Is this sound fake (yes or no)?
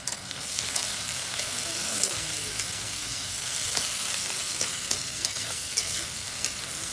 yes